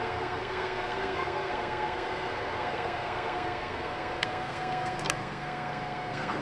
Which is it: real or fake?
fake